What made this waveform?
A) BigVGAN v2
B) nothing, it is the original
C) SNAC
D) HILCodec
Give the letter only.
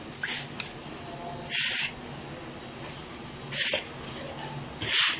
B